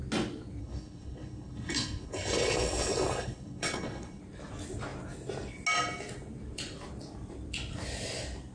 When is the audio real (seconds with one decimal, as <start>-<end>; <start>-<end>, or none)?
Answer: 0.0-0.6; 4.2-8.5